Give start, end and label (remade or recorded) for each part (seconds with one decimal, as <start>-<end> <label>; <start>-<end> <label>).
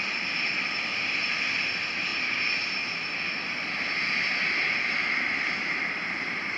0.0-6.6 recorded